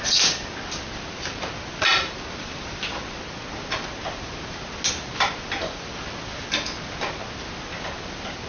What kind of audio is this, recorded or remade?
recorded